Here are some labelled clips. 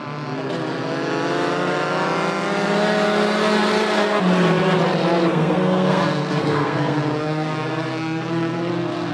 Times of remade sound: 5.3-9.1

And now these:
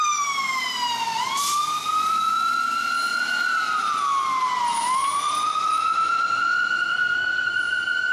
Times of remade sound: 6.9-7.5

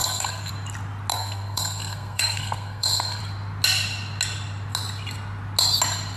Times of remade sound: 0.0-0.5; 1.1-3.2